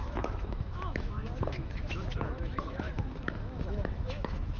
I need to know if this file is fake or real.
fake